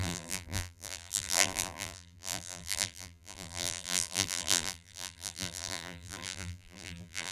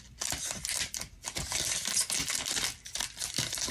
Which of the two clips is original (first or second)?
second